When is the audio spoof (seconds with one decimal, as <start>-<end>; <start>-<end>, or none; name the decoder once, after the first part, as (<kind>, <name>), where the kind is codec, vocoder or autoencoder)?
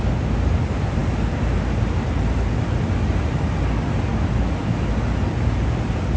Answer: none